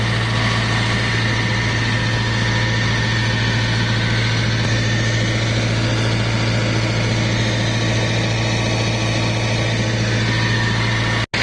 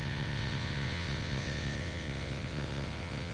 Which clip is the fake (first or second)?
second